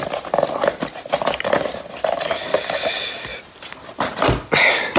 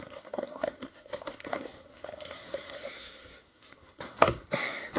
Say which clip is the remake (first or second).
second